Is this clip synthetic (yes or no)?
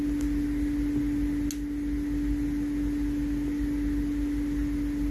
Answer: no